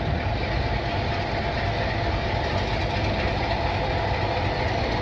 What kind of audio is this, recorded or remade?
recorded